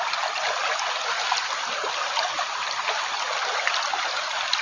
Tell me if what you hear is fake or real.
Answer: fake